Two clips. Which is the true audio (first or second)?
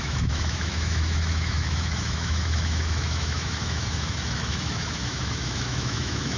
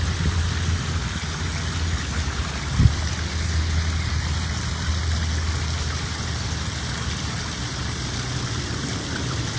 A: second